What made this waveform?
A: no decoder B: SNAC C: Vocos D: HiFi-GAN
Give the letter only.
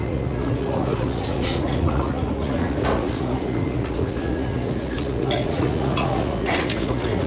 C